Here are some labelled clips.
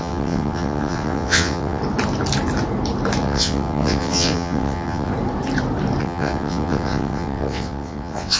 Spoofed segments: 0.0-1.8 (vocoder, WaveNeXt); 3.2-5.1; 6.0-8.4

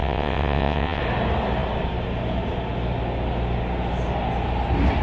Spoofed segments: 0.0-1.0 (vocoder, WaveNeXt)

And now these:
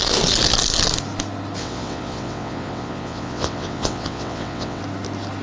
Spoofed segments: 1.6-4.8 (vocoder, WaveNeXt)